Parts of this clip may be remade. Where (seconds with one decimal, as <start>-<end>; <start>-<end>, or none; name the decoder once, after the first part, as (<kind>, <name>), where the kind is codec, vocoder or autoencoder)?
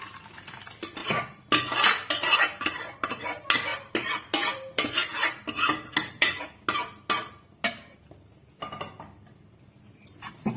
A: none